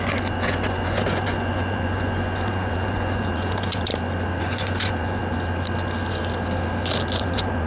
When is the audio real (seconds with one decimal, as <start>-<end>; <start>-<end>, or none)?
3.9-4.4; 5.2-7.2

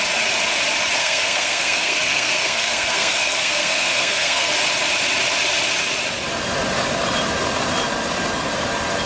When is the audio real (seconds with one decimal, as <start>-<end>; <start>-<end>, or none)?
0.0-1.0; 4.5-9.1